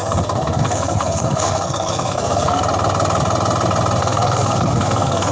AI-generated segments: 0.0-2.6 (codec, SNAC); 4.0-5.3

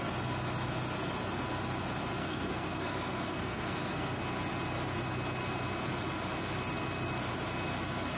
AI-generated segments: 2.2-4.2 (codec, SNAC)

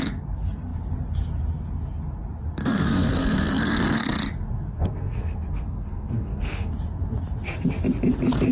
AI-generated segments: 2.6-4.1 (codec, SNAC); 4.7-6.7

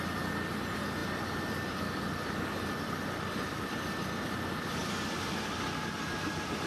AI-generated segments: none

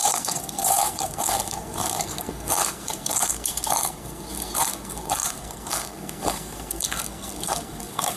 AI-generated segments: 0.0-8.2 (codec, SNAC)

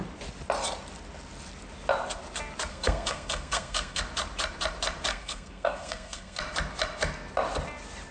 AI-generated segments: 2.7-4.0 (codec, SNAC); 5.1-6.4